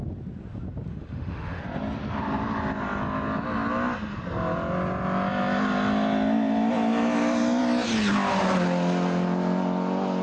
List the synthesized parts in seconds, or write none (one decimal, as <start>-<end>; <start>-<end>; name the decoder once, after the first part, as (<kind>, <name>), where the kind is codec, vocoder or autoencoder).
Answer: 0.9-1.6 (autoencoder, DAC-VAE)